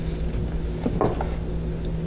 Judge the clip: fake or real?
real